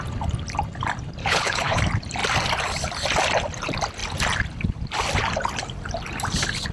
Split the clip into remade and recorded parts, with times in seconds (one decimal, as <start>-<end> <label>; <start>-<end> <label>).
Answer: 0.0-1.2 recorded; 1.2-1.8 remade; 1.8-6.7 recorded